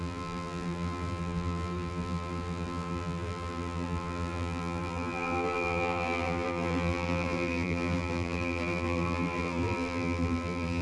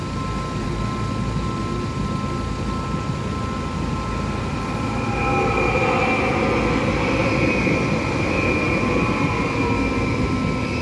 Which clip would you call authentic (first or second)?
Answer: second